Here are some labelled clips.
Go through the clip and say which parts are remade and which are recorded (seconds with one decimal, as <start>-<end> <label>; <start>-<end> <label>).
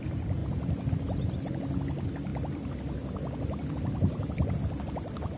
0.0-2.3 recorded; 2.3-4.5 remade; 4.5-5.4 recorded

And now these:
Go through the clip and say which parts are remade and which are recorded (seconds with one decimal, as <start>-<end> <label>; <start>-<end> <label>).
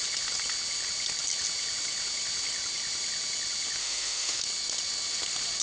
0.0-3.8 recorded; 3.8-4.4 remade; 4.4-5.6 recorded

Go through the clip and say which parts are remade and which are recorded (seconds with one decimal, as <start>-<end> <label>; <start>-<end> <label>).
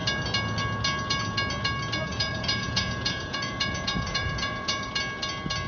0.0-2.1 recorded; 2.1-4.9 remade; 4.9-5.7 recorded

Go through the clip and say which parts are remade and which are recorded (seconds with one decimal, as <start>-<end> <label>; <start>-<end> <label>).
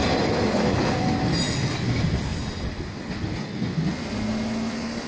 0.0-5.1 recorded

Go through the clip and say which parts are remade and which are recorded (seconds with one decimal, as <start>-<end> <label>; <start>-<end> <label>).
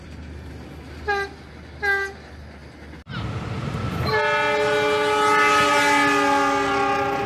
0.0-7.3 recorded